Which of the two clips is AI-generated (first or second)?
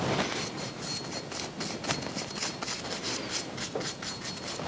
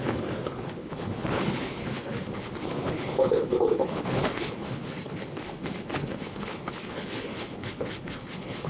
second